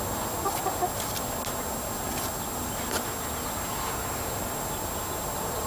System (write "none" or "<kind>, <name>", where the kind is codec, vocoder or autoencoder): none